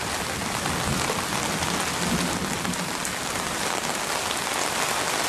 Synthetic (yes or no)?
no